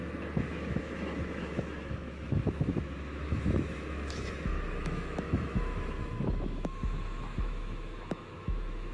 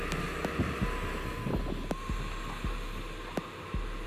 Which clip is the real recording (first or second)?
second